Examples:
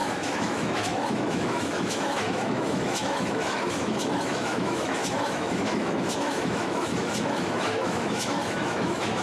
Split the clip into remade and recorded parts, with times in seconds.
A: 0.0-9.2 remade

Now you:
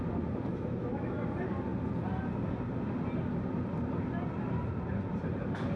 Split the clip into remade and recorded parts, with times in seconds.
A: 0.0-0.5 recorded; 0.5-1.2 remade; 1.2-5.8 recorded

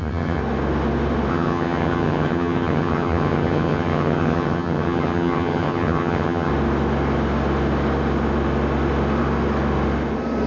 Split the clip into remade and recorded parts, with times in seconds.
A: 0.0-0.4 remade; 0.4-1.3 recorded; 1.3-6.5 remade; 6.5-10.5 recorded

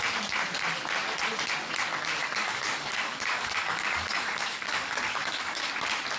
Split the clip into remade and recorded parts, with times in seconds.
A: 0.0-2.2 recorded; 2.2-5.7 remade; 5.7-6.2 recorded

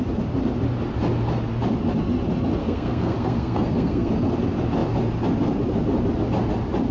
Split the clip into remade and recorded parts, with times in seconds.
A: 0.0-2.6 recorded; 2.6-4.1 remade; 4.1-6.9 recorded